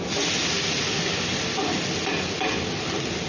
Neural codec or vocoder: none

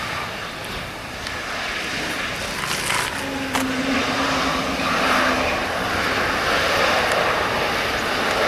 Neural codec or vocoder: none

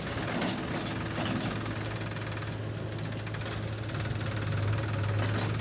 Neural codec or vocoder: none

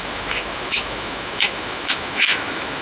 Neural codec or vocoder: autoencoder, DAC-VAE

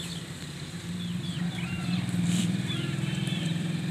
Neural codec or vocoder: vocoder, BigVGAN v2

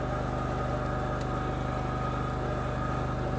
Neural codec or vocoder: none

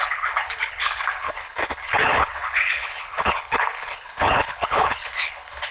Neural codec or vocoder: codec, HILCodec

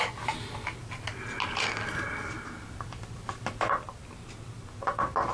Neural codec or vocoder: none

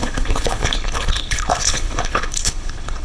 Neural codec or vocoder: codec, HILCodec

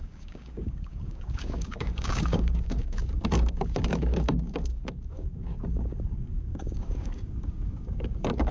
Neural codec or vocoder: codec, DAC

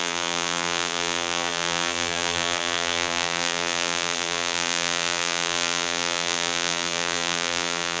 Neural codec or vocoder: vocoder, BigVGAN v2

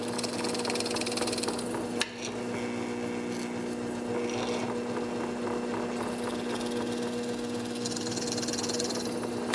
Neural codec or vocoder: none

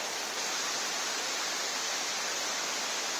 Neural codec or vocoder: none